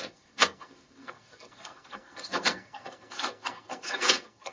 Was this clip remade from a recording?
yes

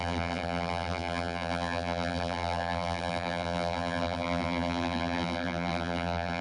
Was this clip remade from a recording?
yes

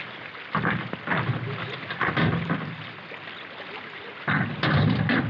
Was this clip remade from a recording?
no